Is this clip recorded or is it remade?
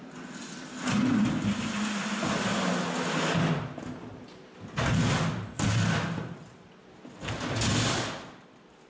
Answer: recorded